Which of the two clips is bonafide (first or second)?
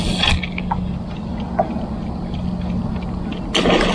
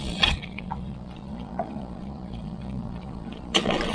first